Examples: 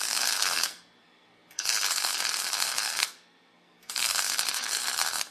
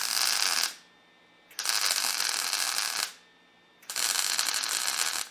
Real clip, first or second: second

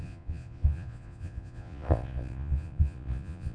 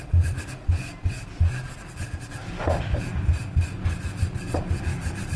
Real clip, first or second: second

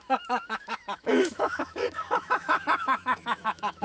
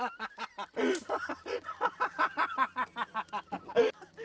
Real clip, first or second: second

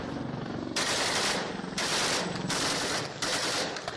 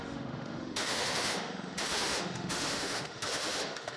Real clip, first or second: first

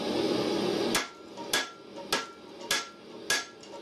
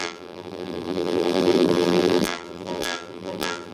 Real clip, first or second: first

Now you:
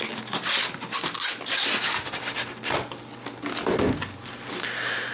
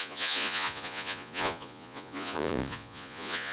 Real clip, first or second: first